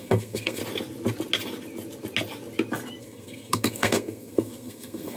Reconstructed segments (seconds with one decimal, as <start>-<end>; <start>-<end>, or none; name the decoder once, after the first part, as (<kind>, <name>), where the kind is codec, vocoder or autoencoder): 0.0-0.6 (codec, SNAC); 3.0-5.2